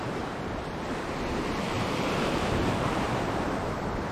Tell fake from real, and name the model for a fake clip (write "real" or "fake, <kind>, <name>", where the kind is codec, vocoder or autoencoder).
fake, vocoder, BigVGAN v2